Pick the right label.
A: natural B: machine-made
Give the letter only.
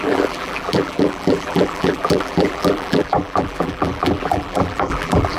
B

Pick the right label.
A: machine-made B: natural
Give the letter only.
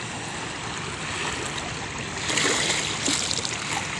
B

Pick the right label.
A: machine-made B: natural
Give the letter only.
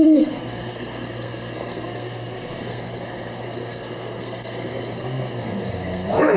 A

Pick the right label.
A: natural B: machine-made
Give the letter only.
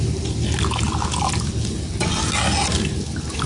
A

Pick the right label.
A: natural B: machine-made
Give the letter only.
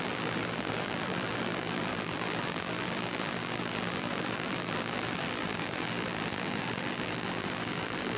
B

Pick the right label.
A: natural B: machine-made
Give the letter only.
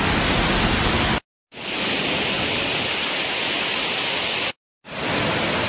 A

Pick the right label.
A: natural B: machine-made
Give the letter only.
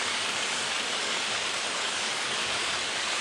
B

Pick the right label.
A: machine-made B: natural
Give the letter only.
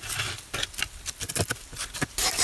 B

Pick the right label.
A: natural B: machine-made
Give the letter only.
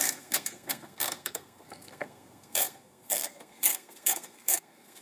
B